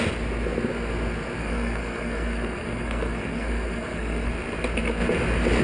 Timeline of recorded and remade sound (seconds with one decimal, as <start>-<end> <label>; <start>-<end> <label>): 0.0-1.4 recorded; 1.4-4.3 remade; 4.3-5.6 recorded